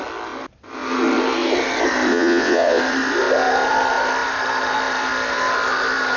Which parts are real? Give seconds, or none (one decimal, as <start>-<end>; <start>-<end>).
0.0-2.1; 2.8-6.2